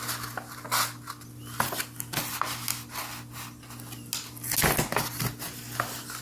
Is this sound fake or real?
real